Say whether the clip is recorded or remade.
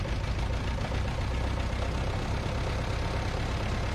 recorded